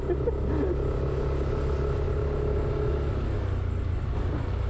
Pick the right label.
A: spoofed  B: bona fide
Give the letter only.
B